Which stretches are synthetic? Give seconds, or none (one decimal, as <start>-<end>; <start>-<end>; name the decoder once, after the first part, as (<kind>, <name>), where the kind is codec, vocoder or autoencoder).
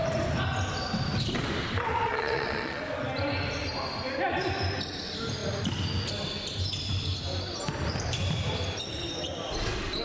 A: 1.9-2.8 (vocoder, Vocos)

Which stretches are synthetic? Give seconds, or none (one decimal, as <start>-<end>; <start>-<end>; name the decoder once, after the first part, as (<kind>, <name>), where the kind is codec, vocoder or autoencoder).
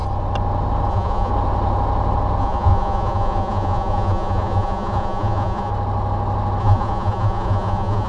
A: 0.9-1.3 (vocoder, Vocos); 2.4-5.7; 6.6-8.1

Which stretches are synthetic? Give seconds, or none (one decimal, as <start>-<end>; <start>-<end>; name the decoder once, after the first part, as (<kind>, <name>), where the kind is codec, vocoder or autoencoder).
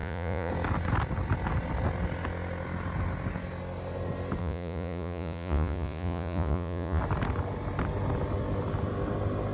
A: 0.0-0.5 (vocoder, Vocos); 4.4-7.0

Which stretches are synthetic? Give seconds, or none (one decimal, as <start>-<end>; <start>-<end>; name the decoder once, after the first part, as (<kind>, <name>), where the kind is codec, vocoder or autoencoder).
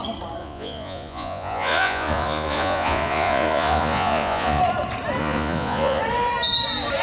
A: 0.4-4.6 (vocoder, Vocos); 5.2-6.0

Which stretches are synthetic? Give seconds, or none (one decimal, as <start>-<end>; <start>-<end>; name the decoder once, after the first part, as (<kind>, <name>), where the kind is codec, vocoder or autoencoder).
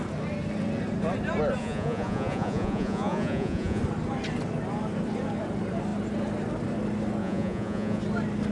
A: 1.6-3.8 (vocoder, Vocos); 7.2-8.0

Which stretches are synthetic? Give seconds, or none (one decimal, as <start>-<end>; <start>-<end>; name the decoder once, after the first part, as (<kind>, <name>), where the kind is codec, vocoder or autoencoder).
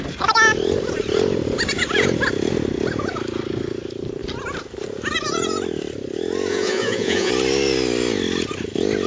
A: 6.5-7.3 (vocoder, Vocos)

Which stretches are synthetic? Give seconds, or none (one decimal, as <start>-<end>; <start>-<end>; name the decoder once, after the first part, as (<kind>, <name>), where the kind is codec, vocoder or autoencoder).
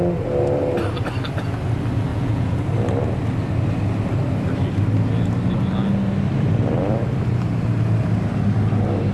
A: 2.1-2.6 (vocoder, Vocos)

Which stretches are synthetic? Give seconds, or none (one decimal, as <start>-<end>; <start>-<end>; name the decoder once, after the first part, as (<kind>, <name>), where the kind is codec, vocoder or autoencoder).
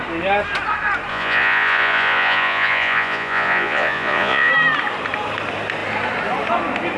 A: 1.1-4.5 (vocoder, Vocos)